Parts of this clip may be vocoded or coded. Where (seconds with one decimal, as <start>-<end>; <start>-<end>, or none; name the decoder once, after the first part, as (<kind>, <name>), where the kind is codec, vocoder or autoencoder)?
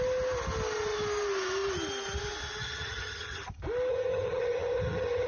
2.6-3.5 (vocoder, HiFi-GAN); 3.9-5.3